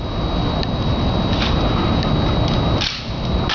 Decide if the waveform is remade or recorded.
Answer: recorded